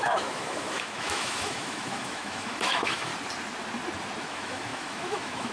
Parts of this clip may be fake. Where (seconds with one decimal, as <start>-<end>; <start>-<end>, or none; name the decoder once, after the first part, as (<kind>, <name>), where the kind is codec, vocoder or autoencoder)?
0.0-3.1 (autoencoder, DAC-VAE); 4.2-5.5